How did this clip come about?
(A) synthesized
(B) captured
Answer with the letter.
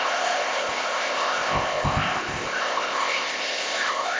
A